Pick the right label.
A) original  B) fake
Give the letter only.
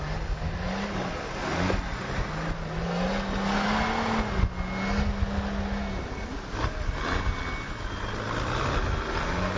A